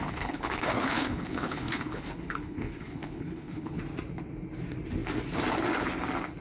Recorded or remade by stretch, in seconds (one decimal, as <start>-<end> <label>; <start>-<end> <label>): 0.0-3.8 remade; 3.8-6.4 recorded